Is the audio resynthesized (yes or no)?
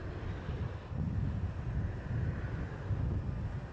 no